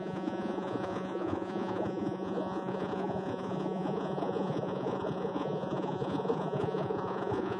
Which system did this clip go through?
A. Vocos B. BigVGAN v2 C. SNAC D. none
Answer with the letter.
A